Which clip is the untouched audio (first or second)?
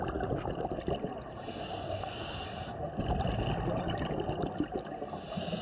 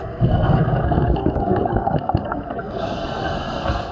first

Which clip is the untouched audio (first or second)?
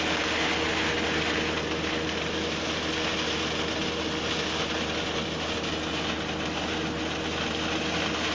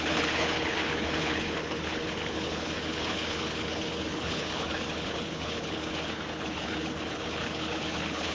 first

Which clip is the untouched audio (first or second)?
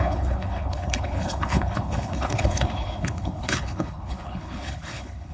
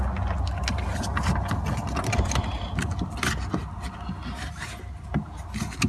second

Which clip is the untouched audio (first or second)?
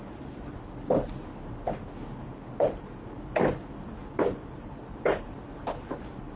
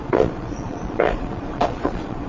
first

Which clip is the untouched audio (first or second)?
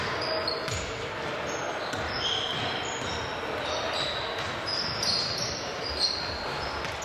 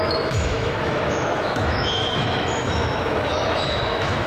first